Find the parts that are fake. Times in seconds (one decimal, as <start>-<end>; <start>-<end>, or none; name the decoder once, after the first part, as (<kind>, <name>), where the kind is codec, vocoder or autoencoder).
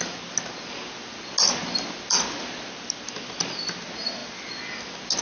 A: none